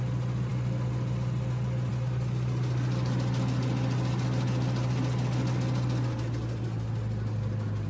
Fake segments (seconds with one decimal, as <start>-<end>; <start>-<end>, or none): none